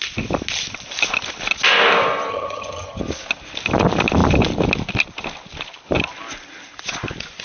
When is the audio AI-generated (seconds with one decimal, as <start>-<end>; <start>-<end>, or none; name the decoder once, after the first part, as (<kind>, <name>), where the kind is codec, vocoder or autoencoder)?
2.3-3.0 (vocoder, HiFi-GAN)